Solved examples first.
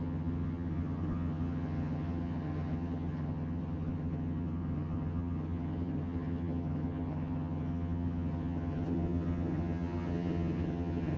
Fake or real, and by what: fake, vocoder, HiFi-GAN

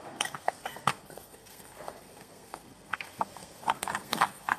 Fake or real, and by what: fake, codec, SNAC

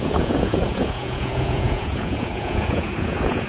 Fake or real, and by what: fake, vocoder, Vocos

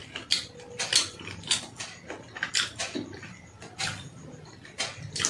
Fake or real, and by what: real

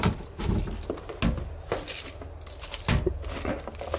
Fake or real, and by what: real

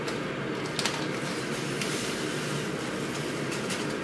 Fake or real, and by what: real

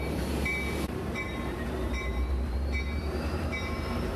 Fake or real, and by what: fake, vocoder, BigVGAN v2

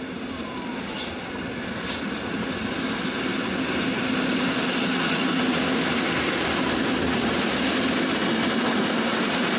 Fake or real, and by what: real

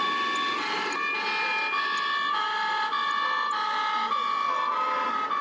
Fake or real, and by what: real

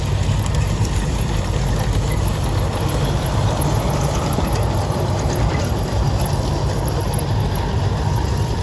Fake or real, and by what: real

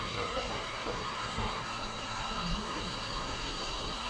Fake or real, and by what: fake, codec, SNAC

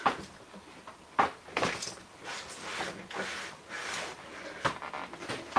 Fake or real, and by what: real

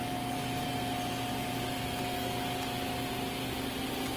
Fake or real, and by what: real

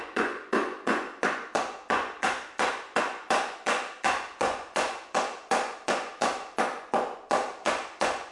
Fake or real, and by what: fake, vocoder, Vocos